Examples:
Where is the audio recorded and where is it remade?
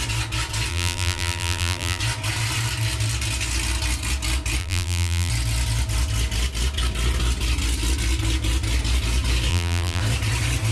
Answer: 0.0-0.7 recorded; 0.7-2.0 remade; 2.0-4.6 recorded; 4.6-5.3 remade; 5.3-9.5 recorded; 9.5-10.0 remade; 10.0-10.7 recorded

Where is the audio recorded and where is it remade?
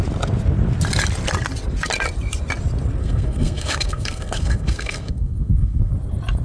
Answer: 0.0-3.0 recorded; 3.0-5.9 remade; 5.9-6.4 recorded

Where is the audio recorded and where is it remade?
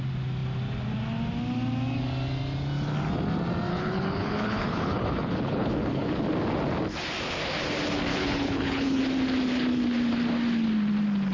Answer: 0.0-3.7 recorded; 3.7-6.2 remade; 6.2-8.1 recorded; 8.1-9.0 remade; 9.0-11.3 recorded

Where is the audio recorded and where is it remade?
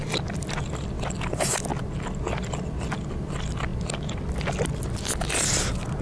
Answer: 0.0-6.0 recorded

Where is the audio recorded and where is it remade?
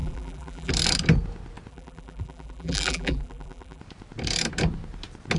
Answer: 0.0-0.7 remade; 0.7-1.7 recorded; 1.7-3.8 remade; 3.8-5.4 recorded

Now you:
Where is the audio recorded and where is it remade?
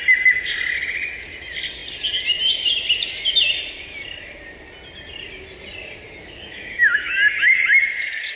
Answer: 0.0-6.2 recorded; 6.2-7.3 remade; 7.3-8.4 recorded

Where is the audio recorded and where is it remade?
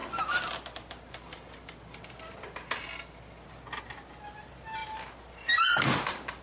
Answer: 0.0-6.4 recorded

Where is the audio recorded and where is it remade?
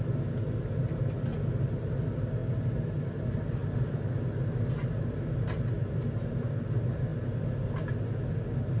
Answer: 0.0-8.8 recorded